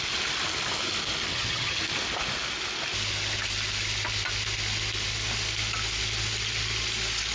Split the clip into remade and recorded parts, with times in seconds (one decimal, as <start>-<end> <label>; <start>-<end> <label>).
0.0-1.3 recorded; 1.3-1.8 remade; 1.8-7.3 recorded

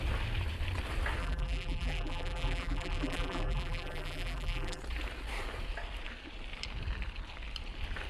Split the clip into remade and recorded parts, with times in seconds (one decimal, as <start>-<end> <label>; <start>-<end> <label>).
0.0-1.2 recorded; 1.2-4.8 remade; 4.8-8.1 recorded

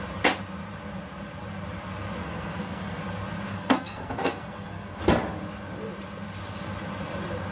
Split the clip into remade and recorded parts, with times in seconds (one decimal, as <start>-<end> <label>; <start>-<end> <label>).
0.0-2.2 recorded; 2.2-3.0 remade; 3.0-3.5 recorded; 3.5-5.0 remade; 5.0-7.5 recorded

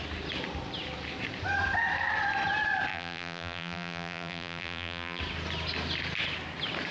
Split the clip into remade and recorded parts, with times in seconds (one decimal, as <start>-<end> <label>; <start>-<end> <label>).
0.0-2.9 recorded; 2.9-5.2 remade; 5.2-6.9 recorded

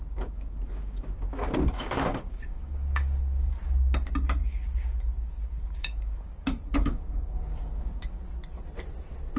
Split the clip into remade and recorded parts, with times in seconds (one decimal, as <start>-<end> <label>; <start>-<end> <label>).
0.0-3.5 remade; 3.5-4.4 recorded; 4.4-8.2 remade; 8.2-9.4 recorded